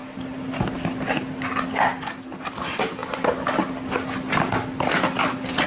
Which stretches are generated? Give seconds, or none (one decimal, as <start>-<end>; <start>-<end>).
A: 0.0-1.0